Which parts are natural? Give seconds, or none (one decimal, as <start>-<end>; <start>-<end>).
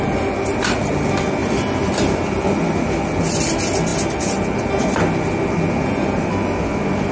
0.0-7.1